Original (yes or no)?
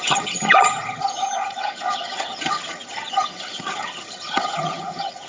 no